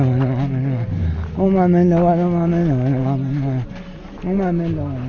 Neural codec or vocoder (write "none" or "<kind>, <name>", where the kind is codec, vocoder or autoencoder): none